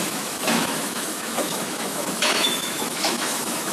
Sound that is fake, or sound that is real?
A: fake